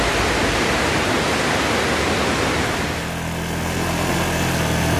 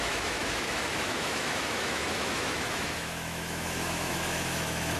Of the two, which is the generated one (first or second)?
second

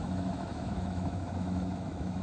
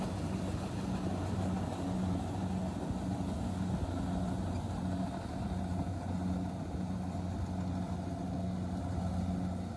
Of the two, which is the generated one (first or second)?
first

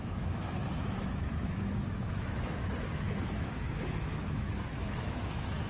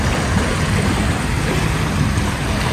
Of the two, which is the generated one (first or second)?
first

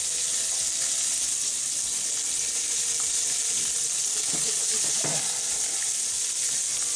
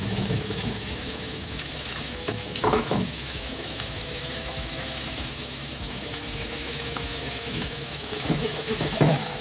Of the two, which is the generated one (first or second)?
second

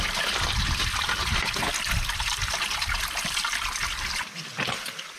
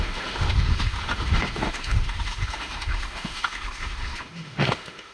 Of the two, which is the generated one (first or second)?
second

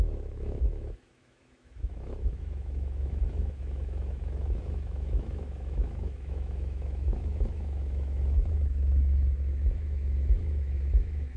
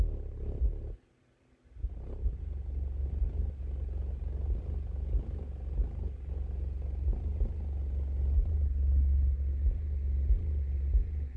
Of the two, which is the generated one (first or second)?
first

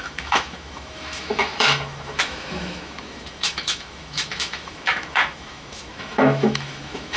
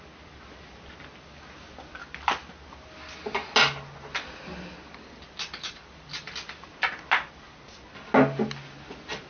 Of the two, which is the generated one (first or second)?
first